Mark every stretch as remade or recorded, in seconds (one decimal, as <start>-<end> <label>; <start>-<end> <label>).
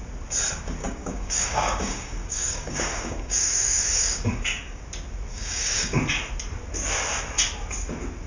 0.0-0.8 recorded; 0.8-4.8 remade; 4.8-5.3 recorded; 5.3-6.0 remade; 6.0-8.3 recorded